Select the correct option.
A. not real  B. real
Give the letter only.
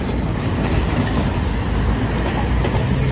B